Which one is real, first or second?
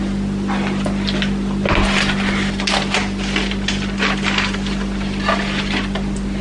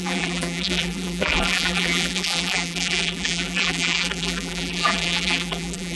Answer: first